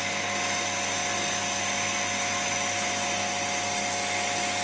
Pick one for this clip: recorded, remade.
recorded